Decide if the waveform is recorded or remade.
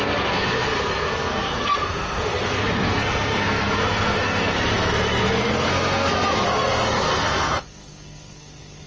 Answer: remade